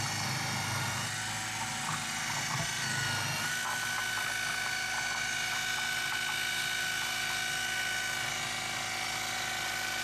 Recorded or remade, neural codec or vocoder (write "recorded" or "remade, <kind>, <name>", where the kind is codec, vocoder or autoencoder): recorded